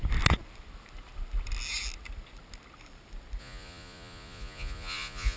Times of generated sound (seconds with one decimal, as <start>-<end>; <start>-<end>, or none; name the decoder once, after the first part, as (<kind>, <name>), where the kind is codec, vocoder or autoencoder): 3.4-5.4 (vocoder, Vocos)